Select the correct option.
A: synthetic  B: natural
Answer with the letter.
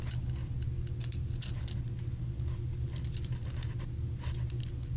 B